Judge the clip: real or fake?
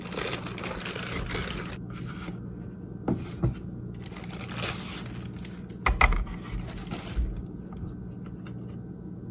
real